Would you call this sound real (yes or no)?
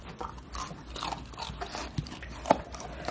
yes